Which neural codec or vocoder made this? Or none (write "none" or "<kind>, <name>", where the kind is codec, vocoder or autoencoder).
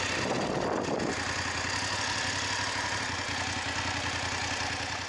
none